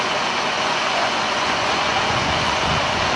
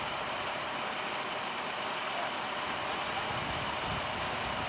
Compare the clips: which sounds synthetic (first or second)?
first